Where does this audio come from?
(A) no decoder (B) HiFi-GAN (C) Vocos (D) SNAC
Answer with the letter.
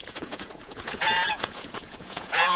C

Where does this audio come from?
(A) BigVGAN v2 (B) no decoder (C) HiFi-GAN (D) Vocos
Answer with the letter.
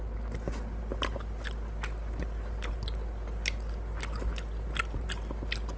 B